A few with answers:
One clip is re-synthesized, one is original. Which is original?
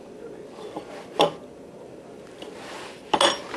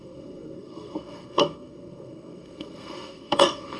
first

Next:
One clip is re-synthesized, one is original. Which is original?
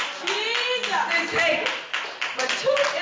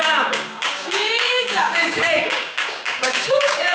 first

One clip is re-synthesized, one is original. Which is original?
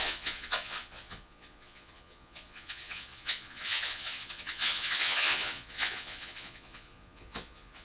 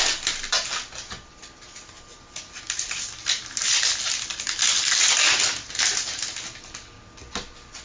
second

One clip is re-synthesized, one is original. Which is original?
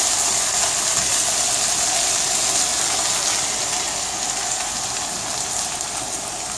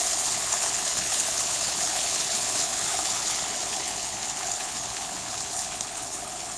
first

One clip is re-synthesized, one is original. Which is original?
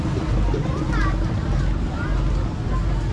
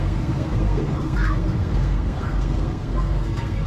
first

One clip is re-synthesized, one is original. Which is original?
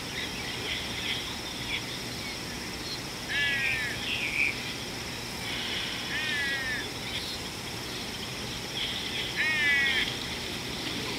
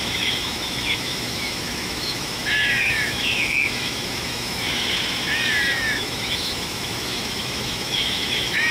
first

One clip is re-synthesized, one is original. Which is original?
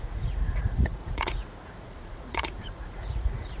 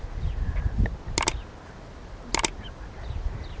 second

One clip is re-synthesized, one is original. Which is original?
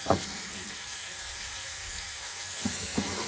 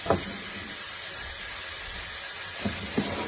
second